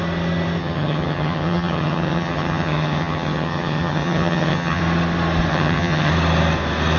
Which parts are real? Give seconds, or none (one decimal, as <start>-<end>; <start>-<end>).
0.0-0.6; 4.8-5.5; 6.1-7.0